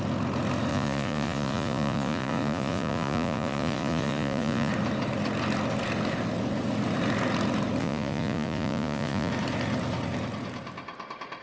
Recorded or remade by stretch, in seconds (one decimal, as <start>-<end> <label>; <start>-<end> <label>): 0.0-0.7 recorded; 0.7-4.7 remade; 4.7-7.8 recorded; 7.8-9.3 remade; 9.3-11.4 recorded